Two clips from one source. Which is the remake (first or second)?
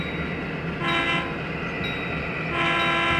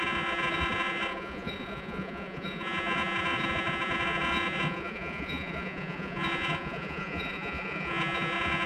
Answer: second